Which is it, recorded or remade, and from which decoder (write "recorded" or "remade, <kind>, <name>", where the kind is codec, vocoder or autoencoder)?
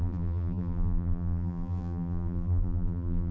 remade, vocoder, BigVGAN v2